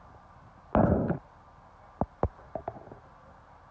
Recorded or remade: recorded